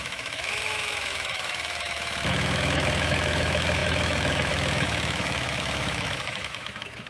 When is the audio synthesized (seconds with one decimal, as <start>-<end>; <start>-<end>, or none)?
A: 0.0-7.1